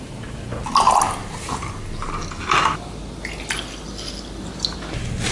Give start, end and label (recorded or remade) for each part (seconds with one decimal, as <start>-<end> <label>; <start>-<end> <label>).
0.0-5.3 recorded